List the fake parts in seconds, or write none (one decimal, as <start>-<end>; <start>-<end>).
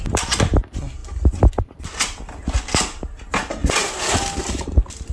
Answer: none